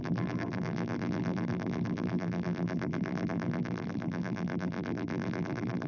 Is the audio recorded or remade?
remade